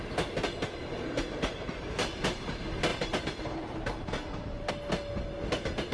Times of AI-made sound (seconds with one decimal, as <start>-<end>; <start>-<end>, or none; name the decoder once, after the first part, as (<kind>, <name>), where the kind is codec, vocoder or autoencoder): 0.8-2.4 (vocoder, BigVGAN v2); 2.9-4.7